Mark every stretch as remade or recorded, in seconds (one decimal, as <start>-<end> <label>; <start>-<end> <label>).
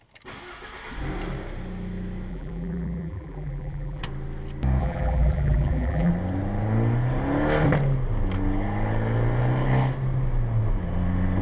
0.0-2.3 recorded; 2.3-4.0 remade; 4.0-4.8 recorded; 4.8-6.1 remade; 6.1-11.4 recorded